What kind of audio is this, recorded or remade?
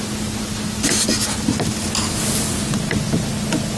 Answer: recorded